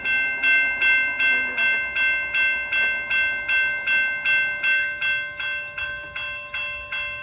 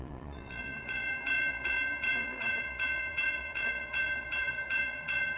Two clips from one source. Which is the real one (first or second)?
first